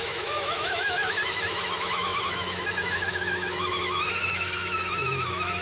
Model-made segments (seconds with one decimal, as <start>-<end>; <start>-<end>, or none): 0.0-5.6